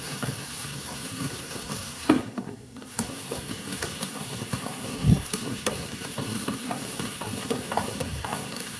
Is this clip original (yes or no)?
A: no